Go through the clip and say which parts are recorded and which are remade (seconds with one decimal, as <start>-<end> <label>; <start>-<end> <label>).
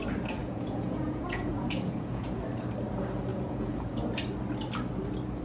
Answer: 0.0-0.4 recorded; 0.4-2.4 remade; 2.4-3.3 recorded; 3.3-4.0 remade; 4.0-5.4 recorded